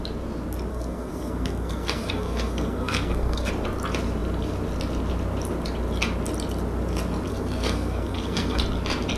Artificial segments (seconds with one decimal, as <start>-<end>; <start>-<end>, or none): 0.7-3.5; 7.3-8.6